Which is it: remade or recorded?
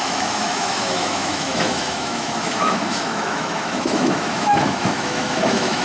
remade